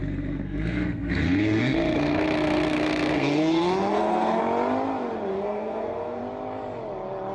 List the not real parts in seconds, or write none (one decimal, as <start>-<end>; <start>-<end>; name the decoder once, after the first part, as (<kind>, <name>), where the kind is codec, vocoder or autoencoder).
0.0-4.4 (codec, SNAC); 5.3-6.2